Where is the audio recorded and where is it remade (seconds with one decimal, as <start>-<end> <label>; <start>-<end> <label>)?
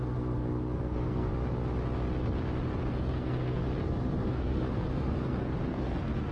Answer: 0.0-1.3 remade; 1.3-2.9 recorded; 2.9-3.6 remade; 3.6-4.3 recorded; 4.3-6.3 remade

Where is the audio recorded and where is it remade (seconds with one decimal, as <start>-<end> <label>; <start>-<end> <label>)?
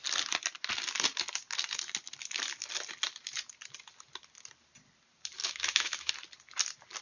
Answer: 0.0-5.4 recorded; 5.4-6.1 remade; 6.1-7.0 recorded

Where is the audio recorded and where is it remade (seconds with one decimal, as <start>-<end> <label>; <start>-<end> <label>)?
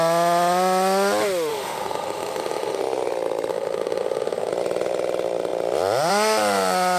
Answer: 0.0-1.5 recorded; 1.5-2.8 remade; 2.8-3.5 recorded; 3.5-4.5 remade; 4.5-7.0 recorded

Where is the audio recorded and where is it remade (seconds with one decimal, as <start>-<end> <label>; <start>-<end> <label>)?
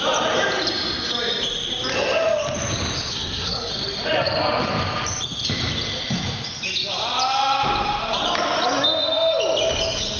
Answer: 0.0-3.1 recorded; 3.1-3.7 remade; 3.7-10.2 recorded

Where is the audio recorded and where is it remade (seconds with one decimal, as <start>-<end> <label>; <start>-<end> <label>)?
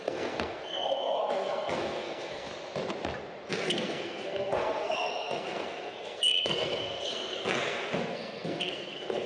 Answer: 0.0-2.5 remade; 2.5-3.5 recorded; 3.5-9.3 remade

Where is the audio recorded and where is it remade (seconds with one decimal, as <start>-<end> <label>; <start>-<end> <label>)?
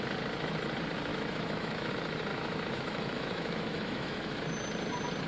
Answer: 0.0-1.1 recorded; 1.1-1.9 remade; 1.9-2.3 recorded; 2.3-4.4 remade; 4.4-5.3 recorded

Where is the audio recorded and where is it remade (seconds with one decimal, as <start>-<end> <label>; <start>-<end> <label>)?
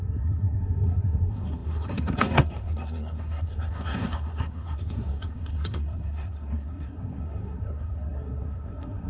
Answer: 0.0-9.1 remade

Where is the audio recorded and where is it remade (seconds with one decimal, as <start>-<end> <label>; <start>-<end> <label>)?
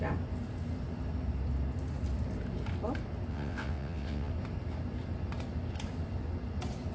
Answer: 0.0-3.3 recorded; 3.3-4.3 remade; 4.3-6.9 recorded